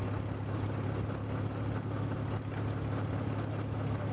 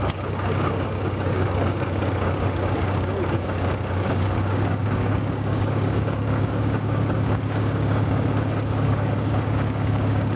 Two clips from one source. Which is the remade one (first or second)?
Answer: second